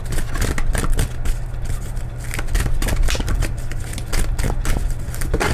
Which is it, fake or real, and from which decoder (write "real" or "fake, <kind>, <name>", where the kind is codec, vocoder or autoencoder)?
real